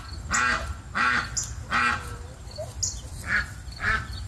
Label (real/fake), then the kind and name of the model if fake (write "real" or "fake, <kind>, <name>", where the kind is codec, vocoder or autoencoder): real